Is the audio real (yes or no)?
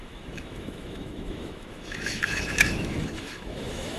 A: no